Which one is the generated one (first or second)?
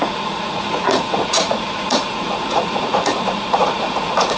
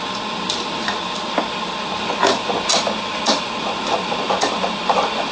first